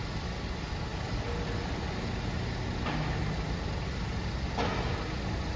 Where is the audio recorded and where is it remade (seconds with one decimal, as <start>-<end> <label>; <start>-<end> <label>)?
0.0-5.6 recorded